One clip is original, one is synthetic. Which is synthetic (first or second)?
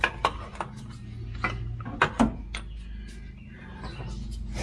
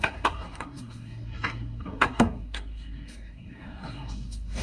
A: second